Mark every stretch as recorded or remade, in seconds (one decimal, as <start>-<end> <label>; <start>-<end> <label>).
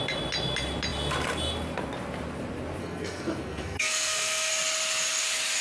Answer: 0.0-2.8 recorded; 2.8-4.5 remade; 4.5-5.6 recorded